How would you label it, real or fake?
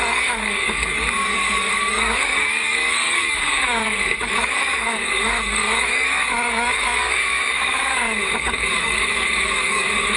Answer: fake